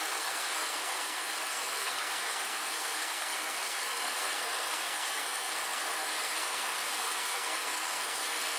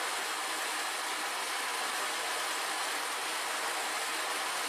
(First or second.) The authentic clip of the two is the second